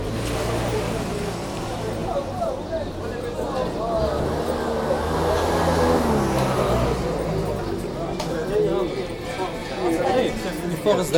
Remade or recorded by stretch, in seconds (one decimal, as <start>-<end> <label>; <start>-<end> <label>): 0.0-9.6 recorded; 9.6-10.3 remade; 10.3-11.2 recorded